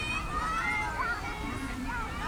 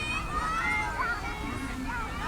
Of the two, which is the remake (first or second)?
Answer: first